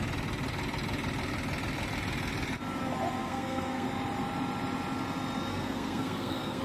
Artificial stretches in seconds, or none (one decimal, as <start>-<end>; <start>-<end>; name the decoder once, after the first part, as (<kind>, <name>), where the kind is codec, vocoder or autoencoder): 3.2-3.9 (codec, SNAC); 5.5-6.6